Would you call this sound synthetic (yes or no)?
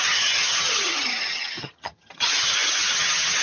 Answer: yes